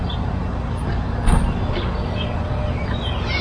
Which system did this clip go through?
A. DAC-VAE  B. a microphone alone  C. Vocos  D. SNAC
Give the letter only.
B